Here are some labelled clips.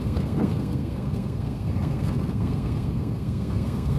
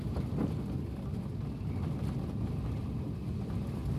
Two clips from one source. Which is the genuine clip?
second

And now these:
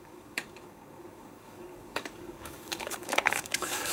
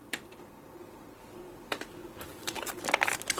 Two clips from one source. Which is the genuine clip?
second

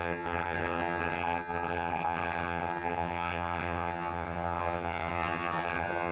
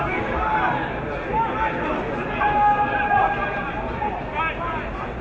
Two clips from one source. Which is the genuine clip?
second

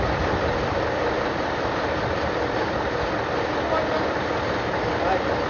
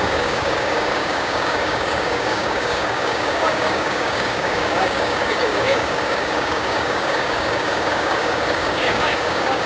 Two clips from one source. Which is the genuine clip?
first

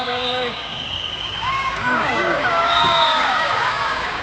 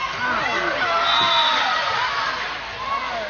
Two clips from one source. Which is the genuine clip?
second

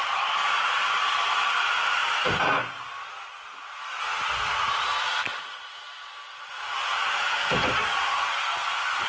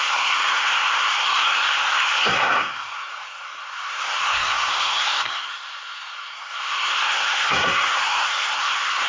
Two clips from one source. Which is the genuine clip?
first